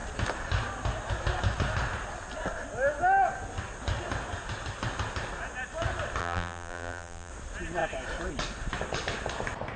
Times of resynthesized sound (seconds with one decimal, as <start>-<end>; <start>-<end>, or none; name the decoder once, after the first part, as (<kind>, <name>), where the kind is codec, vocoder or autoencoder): 6.2-7.3 (vocoder, BigVGAN v2)